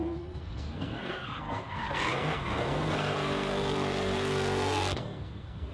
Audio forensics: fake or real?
fake